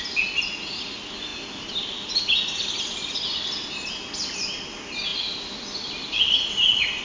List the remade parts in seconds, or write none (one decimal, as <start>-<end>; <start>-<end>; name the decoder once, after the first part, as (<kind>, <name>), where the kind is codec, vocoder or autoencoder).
none